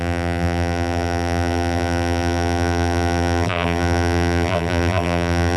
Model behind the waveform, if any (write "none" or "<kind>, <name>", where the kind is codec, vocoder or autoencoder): vocoder, BigVGAN v2